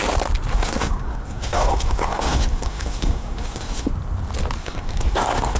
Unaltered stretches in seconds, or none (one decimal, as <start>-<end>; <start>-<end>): 0.0-0.5; 3.9-4.6